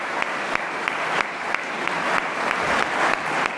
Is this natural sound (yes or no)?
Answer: yes